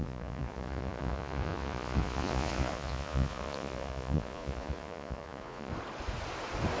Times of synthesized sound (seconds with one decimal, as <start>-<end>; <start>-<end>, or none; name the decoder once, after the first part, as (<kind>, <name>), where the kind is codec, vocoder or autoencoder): 0.0-5.7 (vocoder, Vocos)